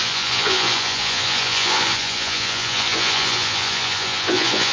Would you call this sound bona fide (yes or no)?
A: no